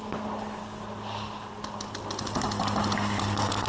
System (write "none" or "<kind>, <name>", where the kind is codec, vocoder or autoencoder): none